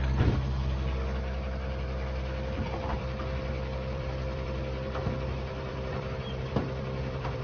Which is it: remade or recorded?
remade